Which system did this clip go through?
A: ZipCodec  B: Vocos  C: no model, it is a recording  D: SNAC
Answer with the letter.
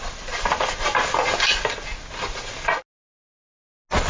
C